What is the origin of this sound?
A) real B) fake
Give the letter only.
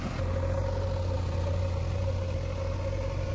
A